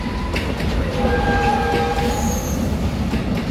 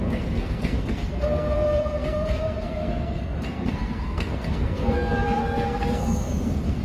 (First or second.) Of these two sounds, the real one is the first